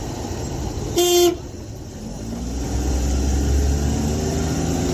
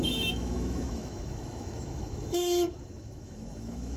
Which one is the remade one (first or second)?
second